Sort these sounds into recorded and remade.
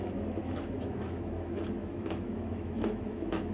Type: remade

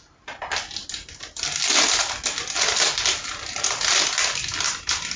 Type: recorded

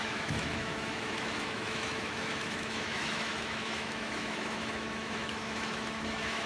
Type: remade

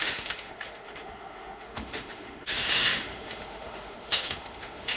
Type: remade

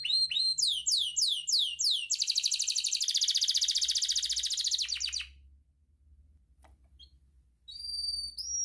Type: recorded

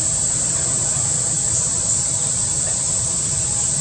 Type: recorded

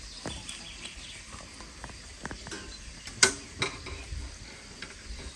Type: recorded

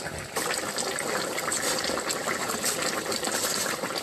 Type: recorded